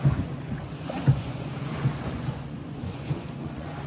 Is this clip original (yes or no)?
no